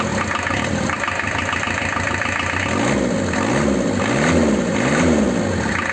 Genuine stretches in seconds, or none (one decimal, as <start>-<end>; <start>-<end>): 0.0-4.4; 5.2-5.9